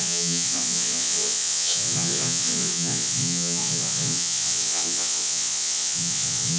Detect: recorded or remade remade